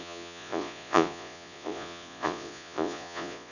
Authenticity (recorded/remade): remade